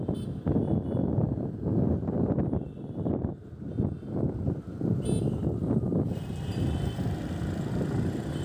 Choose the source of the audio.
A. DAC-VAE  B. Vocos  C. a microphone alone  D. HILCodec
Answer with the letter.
C